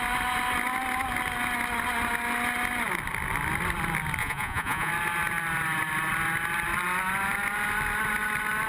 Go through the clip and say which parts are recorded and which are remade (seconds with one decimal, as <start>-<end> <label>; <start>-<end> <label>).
0.0-4.2 recorded; 4.2-4.9 remade; 4.9-8.7 recorded